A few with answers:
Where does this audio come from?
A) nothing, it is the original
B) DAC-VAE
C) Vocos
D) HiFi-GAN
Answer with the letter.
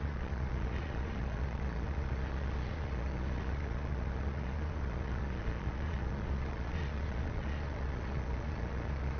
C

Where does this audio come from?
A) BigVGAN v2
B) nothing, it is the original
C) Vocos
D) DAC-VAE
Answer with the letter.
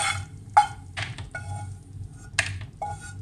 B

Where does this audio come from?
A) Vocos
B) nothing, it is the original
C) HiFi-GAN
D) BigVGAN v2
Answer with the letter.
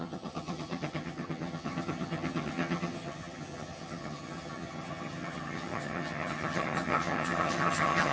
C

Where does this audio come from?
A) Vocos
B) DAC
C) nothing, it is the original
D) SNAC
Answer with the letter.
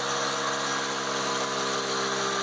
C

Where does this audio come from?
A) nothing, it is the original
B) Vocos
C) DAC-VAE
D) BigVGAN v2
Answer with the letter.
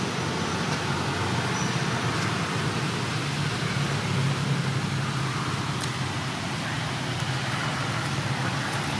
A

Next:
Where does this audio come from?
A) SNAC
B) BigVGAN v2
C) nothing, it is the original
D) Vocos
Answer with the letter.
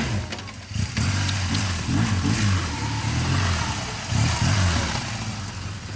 C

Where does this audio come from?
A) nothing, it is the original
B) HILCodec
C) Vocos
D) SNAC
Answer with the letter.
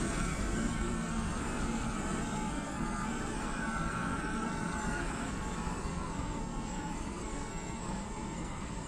D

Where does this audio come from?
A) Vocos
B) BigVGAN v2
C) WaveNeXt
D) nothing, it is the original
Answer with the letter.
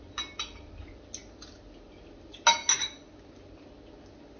D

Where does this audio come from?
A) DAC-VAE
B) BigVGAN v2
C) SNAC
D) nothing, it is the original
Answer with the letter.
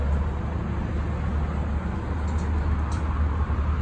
D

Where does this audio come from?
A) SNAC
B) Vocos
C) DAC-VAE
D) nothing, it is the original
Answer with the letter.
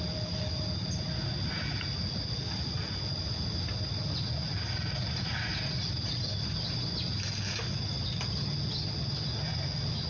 D